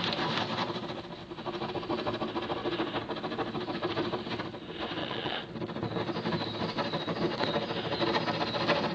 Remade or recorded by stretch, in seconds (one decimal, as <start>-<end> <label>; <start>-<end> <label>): 0.0-5.0 recorded; 5.0-5.5 remade; 5.5-8.9 recorded